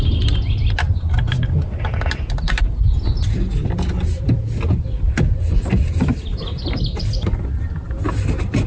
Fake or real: real